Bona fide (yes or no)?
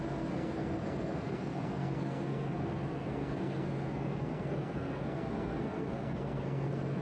no